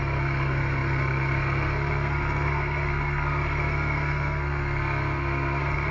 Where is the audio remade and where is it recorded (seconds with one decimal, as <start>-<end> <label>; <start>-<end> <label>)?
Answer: 0.0-5.9 remade

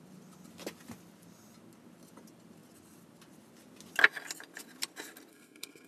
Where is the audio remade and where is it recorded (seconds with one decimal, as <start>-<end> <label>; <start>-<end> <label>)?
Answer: 0.0-5.3 recorded; 5.3-5.9 remade

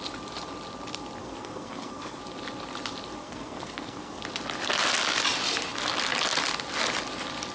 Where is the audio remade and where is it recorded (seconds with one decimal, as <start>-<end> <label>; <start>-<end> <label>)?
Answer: 0.0-1.2 recorded; 1.2-2.2 remade; 2.2-3.2 recorded; 3.2-4.2 remade; 4.2-7.5 recorded

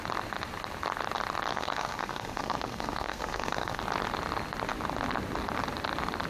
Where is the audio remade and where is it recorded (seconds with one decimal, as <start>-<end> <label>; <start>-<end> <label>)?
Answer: 0.0-1.5 recorded; 1.5-3.8 remade; 3.8-6.3 recorded

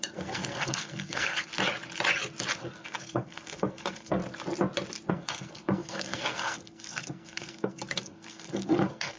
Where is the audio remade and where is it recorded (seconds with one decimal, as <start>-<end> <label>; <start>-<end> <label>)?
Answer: 0.0-1.5 remade; 1.5-2.6 recorded; 2.6-4.2 remade; 4.2-5.1 recorded; 5.1-9.2 remade